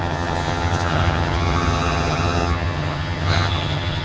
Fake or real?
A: fake